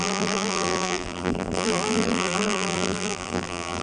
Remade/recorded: remade